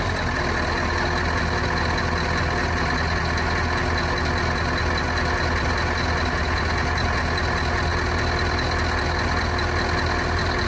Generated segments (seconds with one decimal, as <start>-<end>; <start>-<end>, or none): none